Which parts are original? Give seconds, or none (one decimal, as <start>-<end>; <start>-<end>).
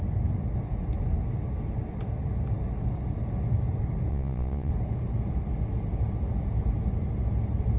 0.0-4.1; 4.7-7.8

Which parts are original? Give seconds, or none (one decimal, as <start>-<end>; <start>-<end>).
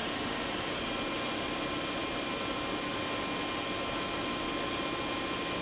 0.0-5.6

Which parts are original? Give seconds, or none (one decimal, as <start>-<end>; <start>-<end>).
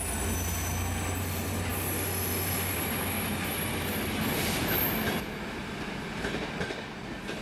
0.0-7.4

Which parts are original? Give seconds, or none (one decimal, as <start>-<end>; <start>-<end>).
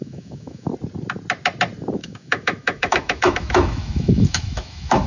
0.7-2.0